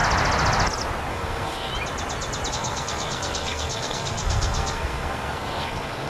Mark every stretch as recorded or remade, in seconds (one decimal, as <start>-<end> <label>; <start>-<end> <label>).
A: 0.0-1.1 recorded; 1.1-1.7 remade; 1.7-2.5 recorded; 2.5-6.1 remade